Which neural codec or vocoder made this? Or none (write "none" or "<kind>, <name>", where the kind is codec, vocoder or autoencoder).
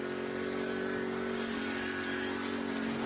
none